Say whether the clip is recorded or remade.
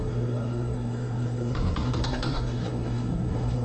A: remade